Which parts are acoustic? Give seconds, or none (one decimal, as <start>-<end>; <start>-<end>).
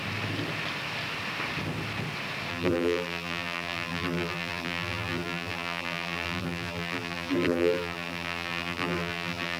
0.0-2.5